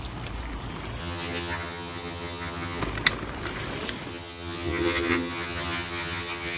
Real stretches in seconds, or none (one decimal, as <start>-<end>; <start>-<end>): 0.0-1.0; 2.8-4.1